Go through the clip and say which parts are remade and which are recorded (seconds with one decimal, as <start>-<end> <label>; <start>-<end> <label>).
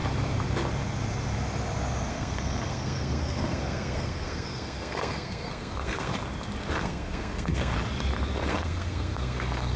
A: 0.0-2.1 recorded; 2.1-6.1 remade; 6.1-6.8 recorded; 6.8-7.7 remade; 7.7-8.5 recorded; 8.5-9.8 remade